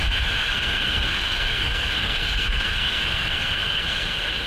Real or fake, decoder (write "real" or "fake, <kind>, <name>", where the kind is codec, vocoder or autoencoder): fake, codec, SNAC